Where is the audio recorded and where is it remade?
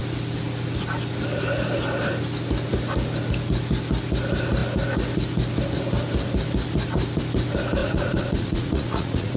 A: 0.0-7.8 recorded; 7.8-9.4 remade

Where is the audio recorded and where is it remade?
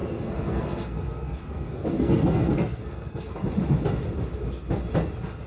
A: 0.0-3.3 remade; 3.3-5.5 recorded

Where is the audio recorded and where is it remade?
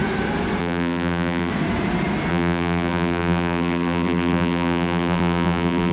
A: 0.0-0.6 recorded; 0.6-1.5 remade; 1.5-2.3 recorded; 2.3-5.9 remade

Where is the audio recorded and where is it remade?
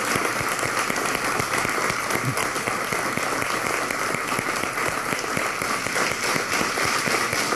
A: 0.0-7.6 recorded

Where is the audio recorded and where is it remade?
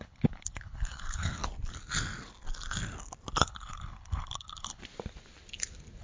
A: 0.0-1.4 remade; 1.4-3.5 recorded; 3.5-4.8 remade; 4.8-6.0 recorded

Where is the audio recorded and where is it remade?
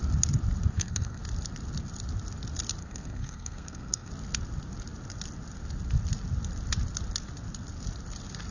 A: 0.0-0.7 recorded; 0.7-1.2 remade; 1.2-2.8 recorded; 2.8-4.1 remade; 4.1-8.5 recorded